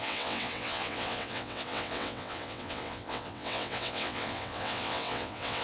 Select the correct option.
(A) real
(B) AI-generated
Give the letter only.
B